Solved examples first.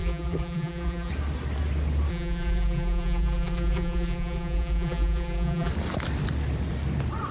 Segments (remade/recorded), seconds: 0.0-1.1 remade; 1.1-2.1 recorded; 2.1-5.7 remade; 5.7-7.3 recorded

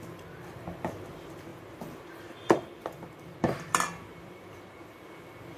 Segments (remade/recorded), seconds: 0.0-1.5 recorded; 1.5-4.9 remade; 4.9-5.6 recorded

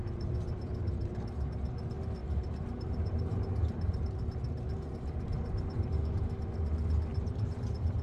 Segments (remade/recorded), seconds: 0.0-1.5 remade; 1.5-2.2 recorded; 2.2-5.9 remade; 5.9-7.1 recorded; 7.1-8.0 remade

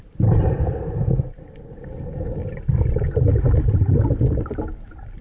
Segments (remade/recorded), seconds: 0.0-1.0 remade; 1.0-1.9 recorded; 1.9-2.4 remade; 2.4-5.2 recorded